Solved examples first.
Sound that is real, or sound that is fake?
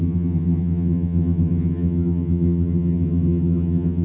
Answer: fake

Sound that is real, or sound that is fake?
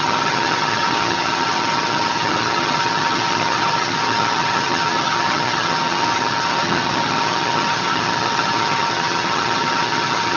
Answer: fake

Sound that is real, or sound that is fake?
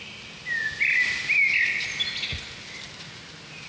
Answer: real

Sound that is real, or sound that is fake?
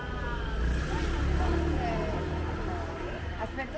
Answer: real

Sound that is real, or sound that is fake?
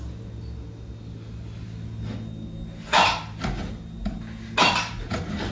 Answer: real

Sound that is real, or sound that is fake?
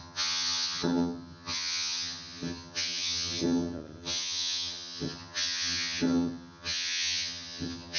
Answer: fake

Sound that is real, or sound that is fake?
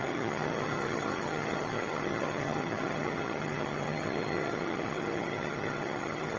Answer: fake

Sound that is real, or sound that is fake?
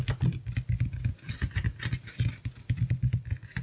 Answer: real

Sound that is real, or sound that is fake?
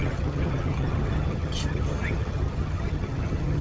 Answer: fake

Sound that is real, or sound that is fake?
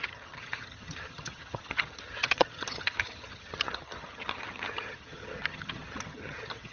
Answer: fake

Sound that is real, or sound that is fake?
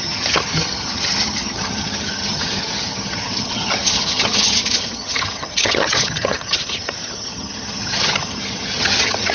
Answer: fake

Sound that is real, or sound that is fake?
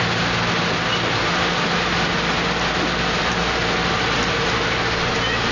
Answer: real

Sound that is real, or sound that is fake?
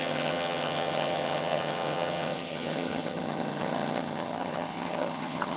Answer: fake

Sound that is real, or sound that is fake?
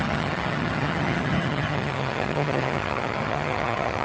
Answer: fake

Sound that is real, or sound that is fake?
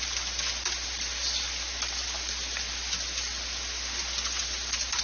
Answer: real